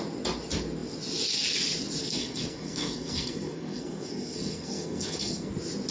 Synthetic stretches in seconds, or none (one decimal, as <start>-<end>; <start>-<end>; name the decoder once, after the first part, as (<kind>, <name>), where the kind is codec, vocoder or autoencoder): 2.0-5.5 (codec, SNAC)